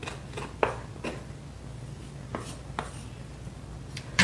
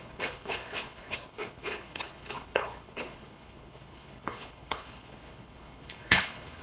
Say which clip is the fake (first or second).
second